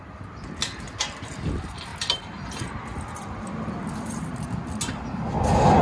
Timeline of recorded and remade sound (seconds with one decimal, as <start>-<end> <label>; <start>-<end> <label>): 0.0-5.8 recorded